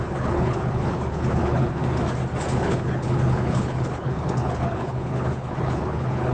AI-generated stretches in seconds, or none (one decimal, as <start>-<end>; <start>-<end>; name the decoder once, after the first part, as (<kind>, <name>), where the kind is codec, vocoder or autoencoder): 0.0-1.8 (codec, HILCodec); 2.6-6.3